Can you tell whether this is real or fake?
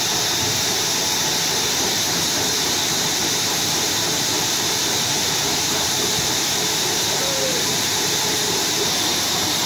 fake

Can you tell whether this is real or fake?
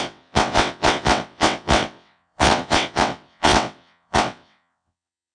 fake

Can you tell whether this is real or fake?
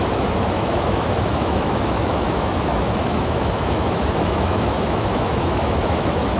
fake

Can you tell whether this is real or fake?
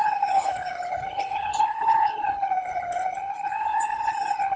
fake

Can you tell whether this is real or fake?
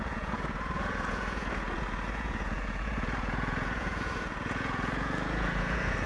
fake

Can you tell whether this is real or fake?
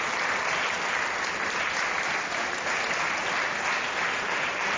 real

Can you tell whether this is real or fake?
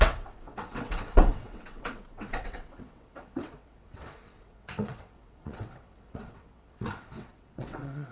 fake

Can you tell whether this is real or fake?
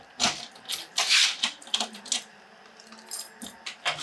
real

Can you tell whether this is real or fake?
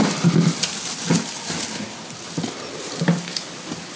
real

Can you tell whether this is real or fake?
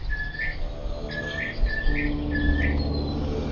real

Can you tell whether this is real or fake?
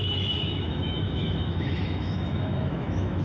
fake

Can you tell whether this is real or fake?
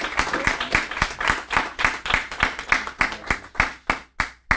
real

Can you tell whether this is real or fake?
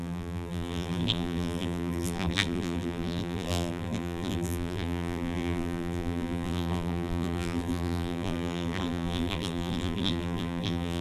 fake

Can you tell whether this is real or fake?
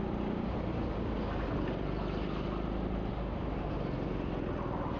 real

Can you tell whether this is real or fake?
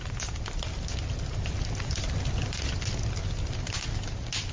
real